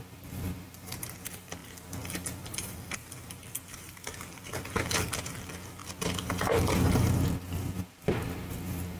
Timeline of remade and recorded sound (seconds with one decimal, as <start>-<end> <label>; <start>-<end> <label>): 0.0-9.0 remade